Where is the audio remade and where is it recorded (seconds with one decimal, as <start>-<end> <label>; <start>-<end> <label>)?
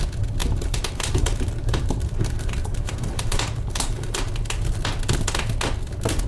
0.0-0.4 recorded; 0.4-4.2 remade; 4.2-6.3 recorded